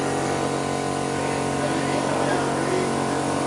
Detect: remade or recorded recorded